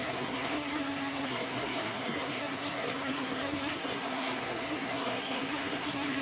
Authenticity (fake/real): fake